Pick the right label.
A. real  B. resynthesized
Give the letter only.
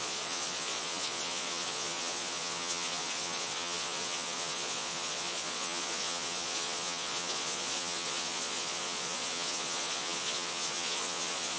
B